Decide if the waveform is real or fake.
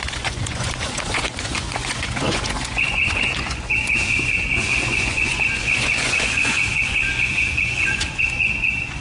fake